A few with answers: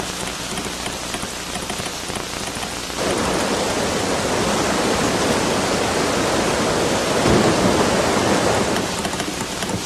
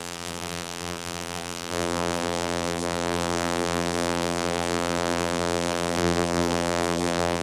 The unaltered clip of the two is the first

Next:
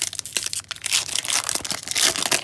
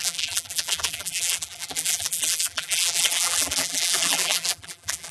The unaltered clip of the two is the first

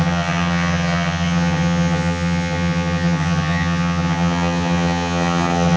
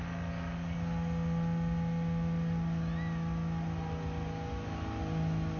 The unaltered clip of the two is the second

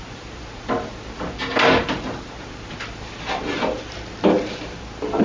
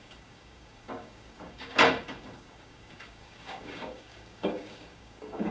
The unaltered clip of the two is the first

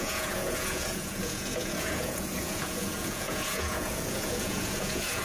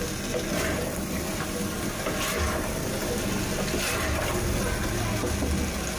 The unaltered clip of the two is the second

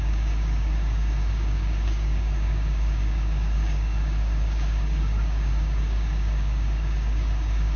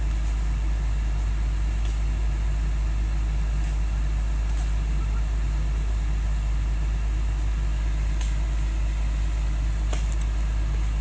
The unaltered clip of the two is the second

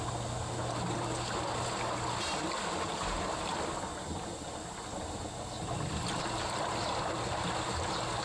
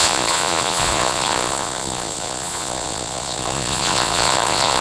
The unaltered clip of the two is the first